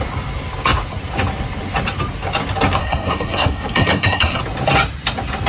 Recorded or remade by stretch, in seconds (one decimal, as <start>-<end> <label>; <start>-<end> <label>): 0.0-2.8 recorded; 2.8-4.4 remade; 4.4-5.5 recorded

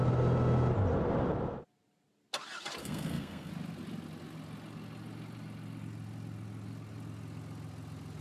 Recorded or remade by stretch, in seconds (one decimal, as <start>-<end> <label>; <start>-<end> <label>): 0.0-2.8 recorded; 2.8-3.5 remade; 3.5-8.2 recorded

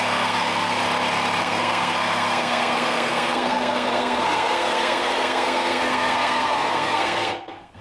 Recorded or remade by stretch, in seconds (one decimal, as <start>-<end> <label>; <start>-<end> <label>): 0.0-0.8 remade; 0.8-1.4 recorded; 1.4-7.8 remade